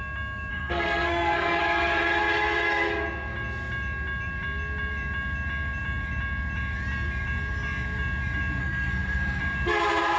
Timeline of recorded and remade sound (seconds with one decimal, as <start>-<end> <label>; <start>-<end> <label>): 0.0-0.5 recorded; 0.5-1.6 remade; 1.6-8.6 recorded; 8.6-9.4 remade; 9.4-10.2 recorded